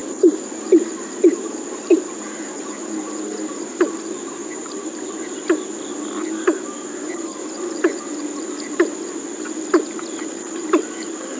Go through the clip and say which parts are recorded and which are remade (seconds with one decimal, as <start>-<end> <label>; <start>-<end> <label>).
0.0-3.7 recorded; 3.7-4.4 remade; 4.4-9.6 recorded; 9.6-11.4 remade